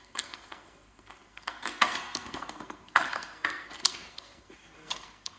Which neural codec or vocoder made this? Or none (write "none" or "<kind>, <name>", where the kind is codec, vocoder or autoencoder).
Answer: codec, SNAC